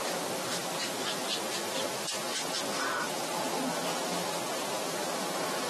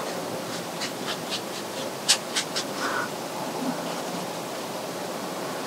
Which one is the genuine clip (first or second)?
first